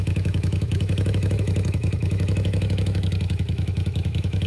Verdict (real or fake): fake